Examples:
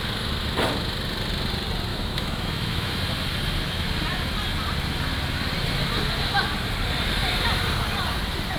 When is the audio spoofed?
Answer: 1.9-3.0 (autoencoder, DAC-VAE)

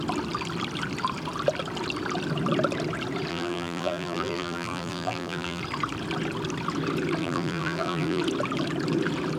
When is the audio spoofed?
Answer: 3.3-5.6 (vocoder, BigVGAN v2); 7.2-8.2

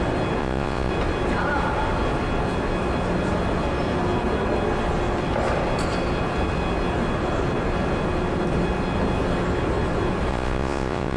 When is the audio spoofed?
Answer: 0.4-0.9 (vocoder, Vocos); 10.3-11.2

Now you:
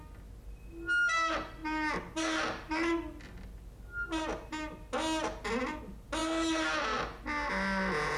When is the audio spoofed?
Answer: none

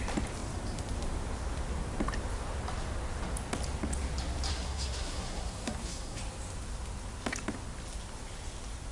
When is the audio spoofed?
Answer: 4.5-6.2 (codec, SNAC)

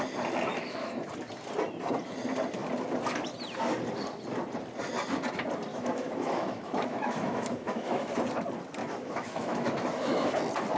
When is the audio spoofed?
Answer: 0.5-1.1 (autoencoder, DAC-VAE); 5.7-8.2; 8.8-10.3

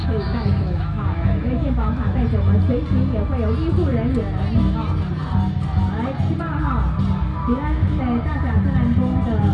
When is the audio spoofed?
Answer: 0.0-2.2 (autoencoder, DAC-VAE); 7.4-8.0

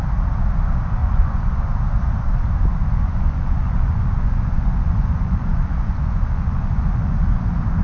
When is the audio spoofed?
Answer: 1.0-1.7 (vocoder, Vocos); 2.9-7.8